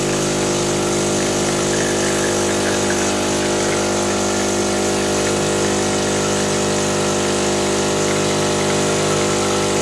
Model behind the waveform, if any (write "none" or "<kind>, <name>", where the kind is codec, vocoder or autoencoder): none